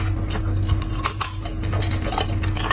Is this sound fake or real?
real